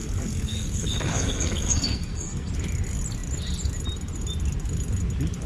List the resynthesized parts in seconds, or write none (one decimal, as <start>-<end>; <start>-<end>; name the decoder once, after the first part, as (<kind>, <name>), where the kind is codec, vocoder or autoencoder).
0.0-2.5 (codec, SNAC)